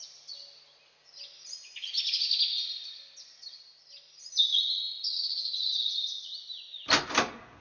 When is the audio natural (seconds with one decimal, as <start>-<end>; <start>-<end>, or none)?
0.0-7.6